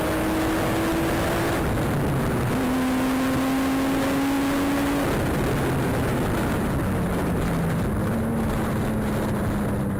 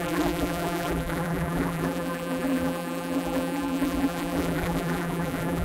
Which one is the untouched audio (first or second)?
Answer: first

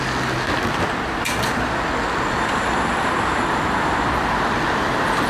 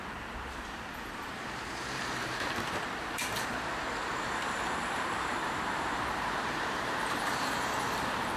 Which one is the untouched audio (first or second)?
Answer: first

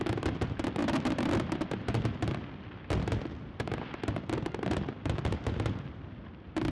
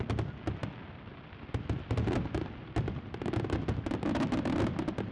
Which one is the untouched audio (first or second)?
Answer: second